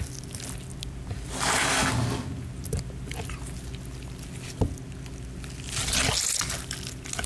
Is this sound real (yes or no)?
yes